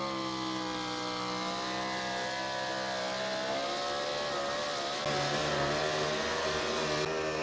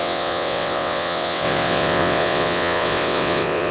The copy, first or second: second